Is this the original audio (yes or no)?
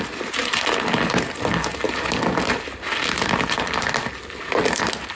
yes